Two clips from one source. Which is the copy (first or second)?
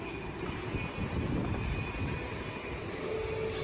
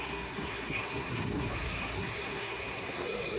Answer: second